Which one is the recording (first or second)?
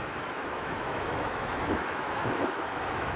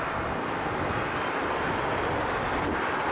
second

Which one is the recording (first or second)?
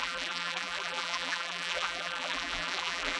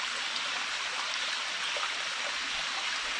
second